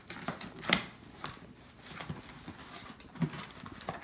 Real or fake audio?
real